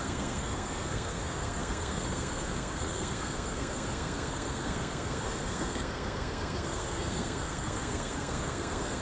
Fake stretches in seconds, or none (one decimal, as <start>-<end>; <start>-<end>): 0.0-9.0